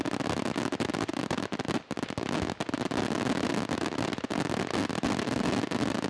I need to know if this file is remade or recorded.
recorded